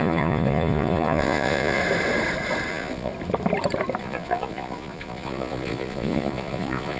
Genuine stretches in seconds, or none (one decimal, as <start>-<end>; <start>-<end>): 1.8-2.7; 3.1-4.0